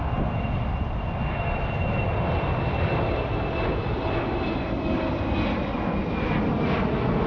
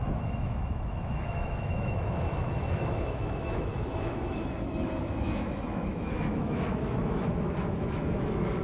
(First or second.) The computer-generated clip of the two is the second